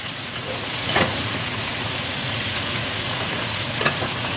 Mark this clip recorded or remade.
remade